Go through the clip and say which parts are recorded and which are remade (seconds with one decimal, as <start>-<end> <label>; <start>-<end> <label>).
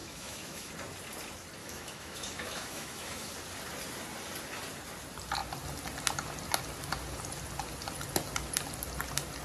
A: 0.0-0.7 remade; 0.7-1.6 recorded; 1.6-3.3 remade; 3.3-9.4 recorded